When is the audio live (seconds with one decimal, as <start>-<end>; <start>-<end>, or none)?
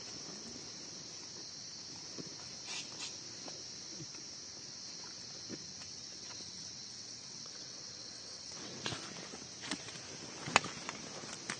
0.0-5.9; 8.9-11.6